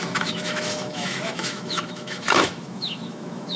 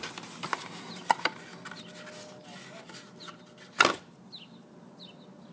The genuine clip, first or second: second